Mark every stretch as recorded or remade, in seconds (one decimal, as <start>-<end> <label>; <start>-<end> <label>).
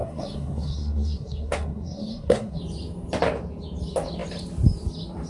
0.0-2.6 remade; 2.6-5.3 recorded